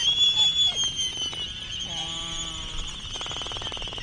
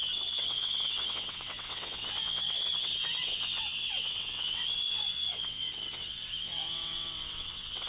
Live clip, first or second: first